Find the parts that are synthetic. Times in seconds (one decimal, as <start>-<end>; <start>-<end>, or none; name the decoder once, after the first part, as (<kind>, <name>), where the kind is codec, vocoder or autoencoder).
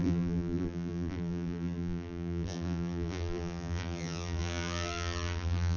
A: 0.0-5.8 (vocoder, BigVGAN v2)